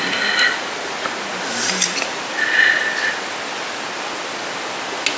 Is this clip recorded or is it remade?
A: recorded